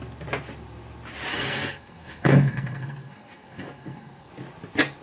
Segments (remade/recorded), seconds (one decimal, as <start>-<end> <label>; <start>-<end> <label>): 0.0-1.3 recorded; 1.3-4.3 remade; 4.3-5.0 recorded